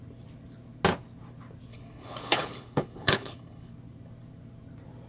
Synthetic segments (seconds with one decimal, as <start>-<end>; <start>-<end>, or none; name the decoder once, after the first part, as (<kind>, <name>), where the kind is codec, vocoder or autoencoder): 1.7-3.7 (codec, HILCodec)